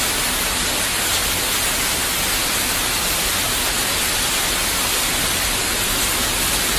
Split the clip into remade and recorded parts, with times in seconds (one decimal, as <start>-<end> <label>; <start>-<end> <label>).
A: 0.0-6.8 recorded